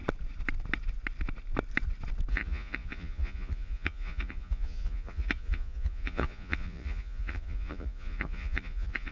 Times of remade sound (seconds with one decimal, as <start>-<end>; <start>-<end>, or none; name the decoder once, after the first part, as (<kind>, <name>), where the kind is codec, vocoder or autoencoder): 2.3-9.1 (vocoder, Vocos)